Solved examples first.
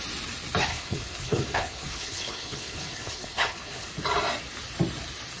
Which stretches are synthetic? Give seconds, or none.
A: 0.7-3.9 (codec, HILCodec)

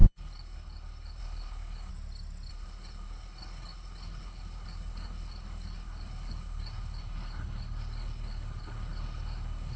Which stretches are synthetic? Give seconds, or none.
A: 0.0-1.9 (codec, HILCodec); 2.5-9.8

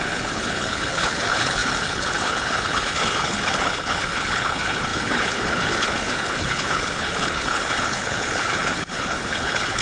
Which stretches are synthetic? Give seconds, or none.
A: 0.0-9.8 (codec, HILCodec)